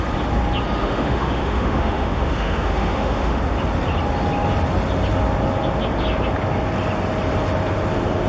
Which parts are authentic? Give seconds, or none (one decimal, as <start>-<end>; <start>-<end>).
0.0-0.8; 3.4-8.3